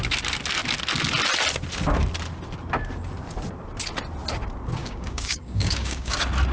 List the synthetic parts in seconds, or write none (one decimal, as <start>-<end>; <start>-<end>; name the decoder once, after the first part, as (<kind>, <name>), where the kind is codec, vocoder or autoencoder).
4.8-6.1 (codec, DAC)